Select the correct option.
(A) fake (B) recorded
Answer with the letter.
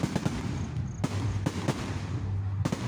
B